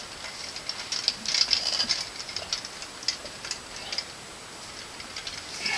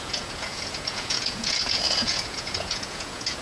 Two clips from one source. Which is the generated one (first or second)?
second